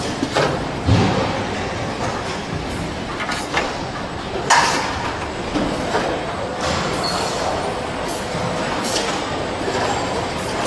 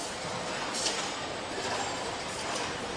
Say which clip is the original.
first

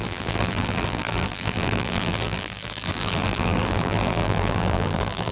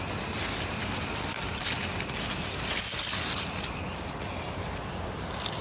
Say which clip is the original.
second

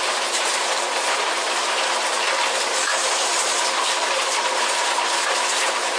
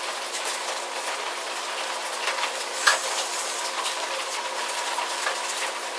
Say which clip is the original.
second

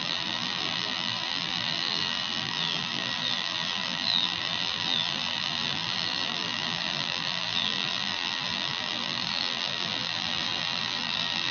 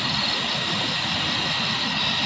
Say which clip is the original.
second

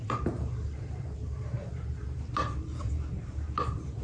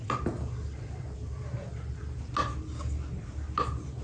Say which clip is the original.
second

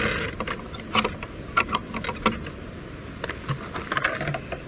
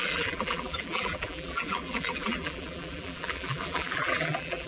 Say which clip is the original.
first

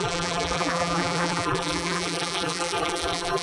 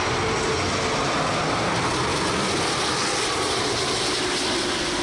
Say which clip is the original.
second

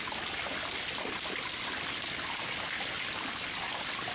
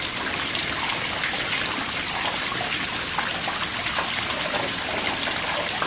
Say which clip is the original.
first